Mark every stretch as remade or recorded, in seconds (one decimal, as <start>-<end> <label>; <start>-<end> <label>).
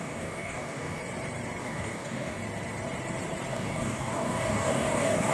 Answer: 0.0-1.0 remade; 1.0-1.6 recorded; 1.6-2.4 remade; 2.4-3.5 recorded; 3.5-5.3 remade